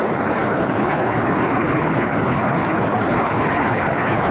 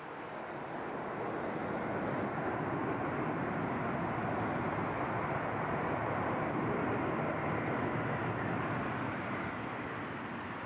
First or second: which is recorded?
second